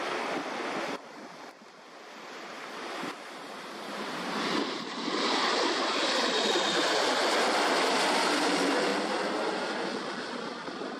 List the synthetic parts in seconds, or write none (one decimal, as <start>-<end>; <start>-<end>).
0.0-8.9; 10.2-11.0